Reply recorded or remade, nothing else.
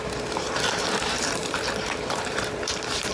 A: remade